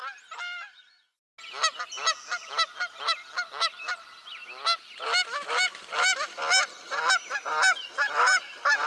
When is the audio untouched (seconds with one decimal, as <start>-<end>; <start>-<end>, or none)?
0.0-8.9